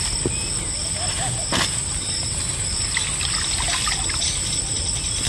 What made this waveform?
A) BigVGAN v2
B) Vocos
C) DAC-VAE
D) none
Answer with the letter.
D